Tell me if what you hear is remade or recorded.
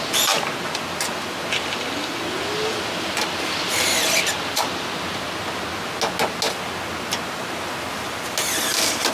recorded